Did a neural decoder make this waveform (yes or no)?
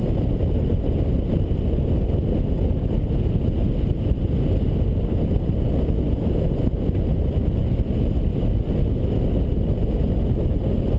no